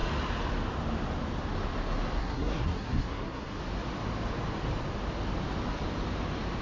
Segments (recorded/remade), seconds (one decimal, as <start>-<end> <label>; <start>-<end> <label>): 0.0-2.2 recorded; 2.2-3.6 remade; 3.6-6.6 recorded